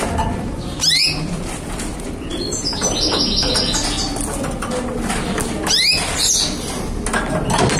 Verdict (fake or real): real